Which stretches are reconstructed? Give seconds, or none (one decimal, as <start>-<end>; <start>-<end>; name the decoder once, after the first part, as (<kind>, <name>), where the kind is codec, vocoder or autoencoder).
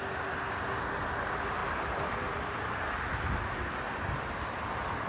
none